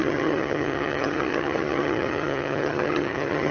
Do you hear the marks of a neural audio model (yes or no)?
yes